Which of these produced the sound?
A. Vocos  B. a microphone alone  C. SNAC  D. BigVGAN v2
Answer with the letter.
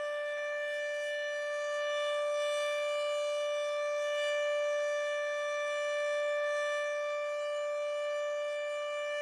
B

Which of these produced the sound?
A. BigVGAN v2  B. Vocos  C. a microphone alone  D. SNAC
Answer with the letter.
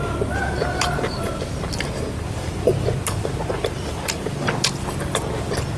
C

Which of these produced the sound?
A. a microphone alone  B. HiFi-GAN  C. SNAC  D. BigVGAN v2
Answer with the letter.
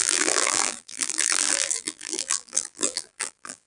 D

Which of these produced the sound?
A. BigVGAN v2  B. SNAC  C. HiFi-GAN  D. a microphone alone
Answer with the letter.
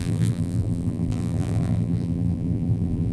A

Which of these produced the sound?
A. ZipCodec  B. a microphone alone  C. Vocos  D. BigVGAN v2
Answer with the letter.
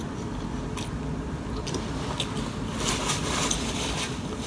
B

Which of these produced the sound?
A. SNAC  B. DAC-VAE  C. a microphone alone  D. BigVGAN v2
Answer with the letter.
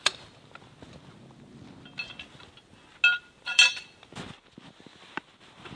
C